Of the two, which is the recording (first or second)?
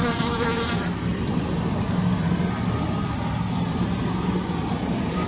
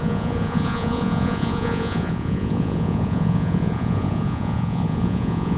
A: first